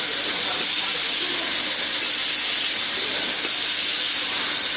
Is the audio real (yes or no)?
yes